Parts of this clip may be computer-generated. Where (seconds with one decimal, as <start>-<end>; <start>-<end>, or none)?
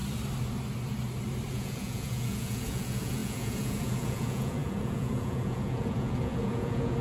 1.5-7.0